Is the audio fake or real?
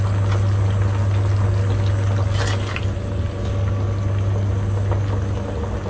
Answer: real